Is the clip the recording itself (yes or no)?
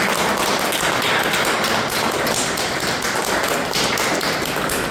yes